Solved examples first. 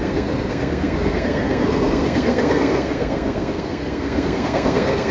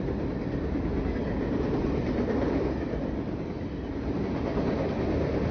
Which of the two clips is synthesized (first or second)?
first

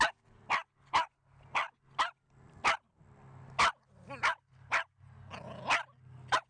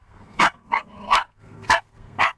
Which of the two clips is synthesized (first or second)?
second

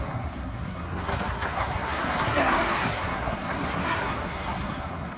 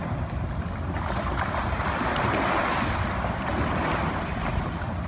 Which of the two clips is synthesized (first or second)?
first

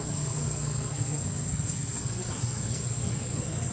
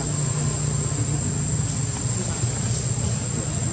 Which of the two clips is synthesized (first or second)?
first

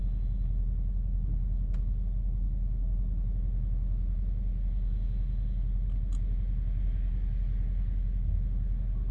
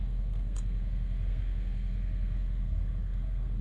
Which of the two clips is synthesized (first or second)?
second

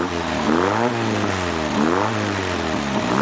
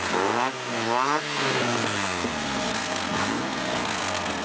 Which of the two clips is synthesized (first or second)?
second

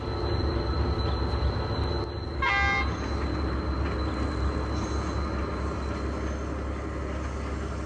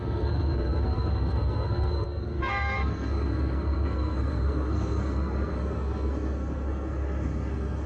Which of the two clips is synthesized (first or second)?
second